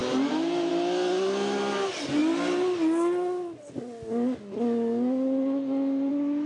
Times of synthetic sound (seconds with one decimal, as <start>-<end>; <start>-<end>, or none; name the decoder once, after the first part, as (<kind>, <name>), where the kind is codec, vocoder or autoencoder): 0.0-0.7 (vocoder, BigVGAN v2)